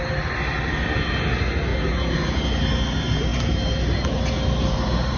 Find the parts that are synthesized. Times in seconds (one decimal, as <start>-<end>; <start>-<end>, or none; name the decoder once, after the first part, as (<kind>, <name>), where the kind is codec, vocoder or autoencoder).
none